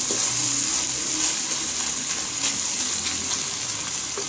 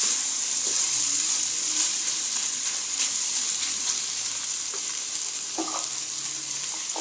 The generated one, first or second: second